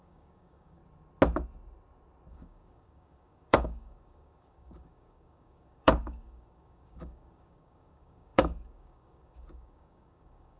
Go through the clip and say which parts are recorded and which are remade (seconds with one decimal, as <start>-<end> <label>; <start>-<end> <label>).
0.0-0.8 remade; 0.8-2.3 recorded; 2.3-10.6 remade